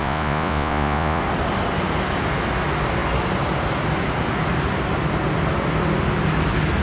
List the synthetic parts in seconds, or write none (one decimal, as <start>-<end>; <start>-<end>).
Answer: 0.0-1.2